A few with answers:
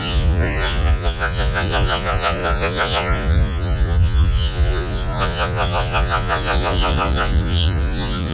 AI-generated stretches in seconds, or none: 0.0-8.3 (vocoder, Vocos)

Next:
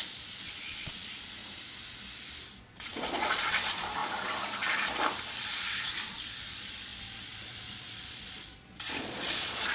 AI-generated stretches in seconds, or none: 0.0-1.4 (vocoder, Vocos); 2.6-4.0; 5.3-9.7